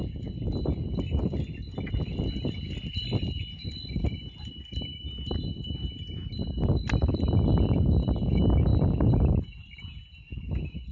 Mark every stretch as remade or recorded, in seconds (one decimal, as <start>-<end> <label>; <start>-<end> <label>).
0.0-10.9 recorded